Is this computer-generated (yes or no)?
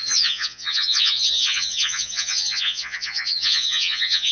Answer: yes